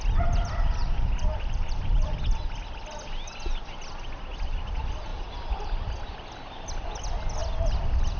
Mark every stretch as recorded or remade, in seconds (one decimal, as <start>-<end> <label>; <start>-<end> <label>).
0.0-0.8 recorded; 0.8-1.9 remade; 1.9-8.2 recorded